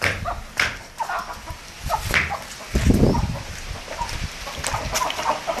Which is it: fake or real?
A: real